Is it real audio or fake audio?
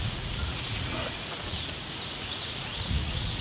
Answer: fake